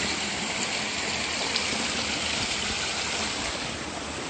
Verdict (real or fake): real